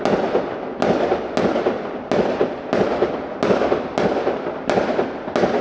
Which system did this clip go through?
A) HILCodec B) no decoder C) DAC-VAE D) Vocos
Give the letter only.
B